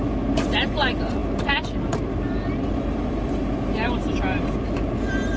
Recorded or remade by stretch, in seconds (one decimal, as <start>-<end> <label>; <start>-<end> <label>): 0.0-5.4 recorded